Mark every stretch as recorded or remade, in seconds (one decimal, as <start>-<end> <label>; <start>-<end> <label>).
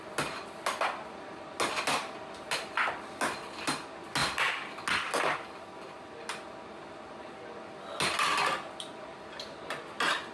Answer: 0.0-10.3 recorded